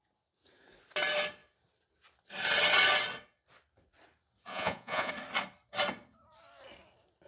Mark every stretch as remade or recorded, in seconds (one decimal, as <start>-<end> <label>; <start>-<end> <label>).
0.0-4.5 recorded; 4.5-5.1 remade; 5.1-7.3 recorded